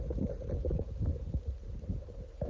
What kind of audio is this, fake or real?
real